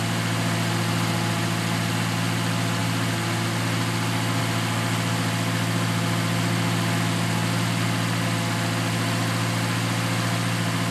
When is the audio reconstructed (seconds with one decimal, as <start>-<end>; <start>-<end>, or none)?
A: none